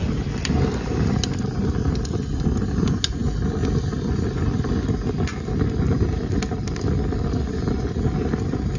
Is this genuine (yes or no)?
yes